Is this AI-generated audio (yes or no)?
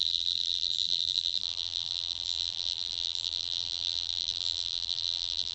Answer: yes